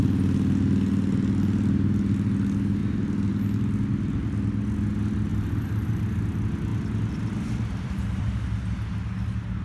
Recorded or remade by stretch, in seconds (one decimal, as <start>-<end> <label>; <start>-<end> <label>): 0.0-5.3 recorded; 5.3-5.9 remade; 5.9-6.7 recorded; 6.7-8.3 remade; 8.3-9.6 recorded